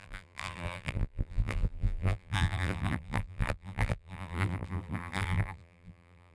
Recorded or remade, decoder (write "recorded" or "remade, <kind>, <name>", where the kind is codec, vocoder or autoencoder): remade, vocoder, BigVGAN v2